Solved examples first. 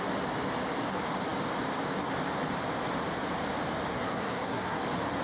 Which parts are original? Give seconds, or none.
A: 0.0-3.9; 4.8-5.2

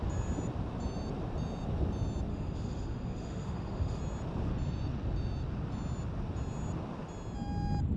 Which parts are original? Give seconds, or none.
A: 0.0-2.3; 4.0-8.0

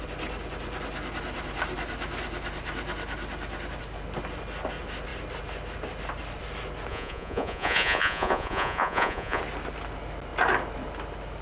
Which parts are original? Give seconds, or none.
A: 0.0-6.9; 9.4-11.4

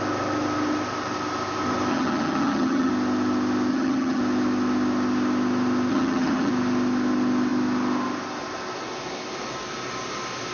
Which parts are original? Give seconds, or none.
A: 0.0-1.9; 2.9-3.7; 4.2-5.9; 6.5-10.5

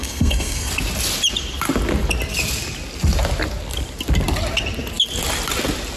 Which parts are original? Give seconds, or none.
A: 0.7-6.0

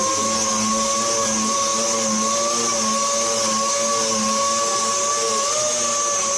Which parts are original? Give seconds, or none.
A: 0.0-6.4

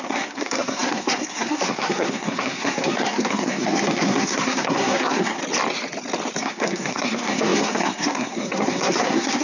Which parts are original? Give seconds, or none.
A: 5.4-6.4

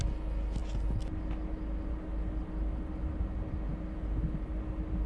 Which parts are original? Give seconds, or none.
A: 0.0-5.1